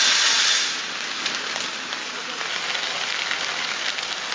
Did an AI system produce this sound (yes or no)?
no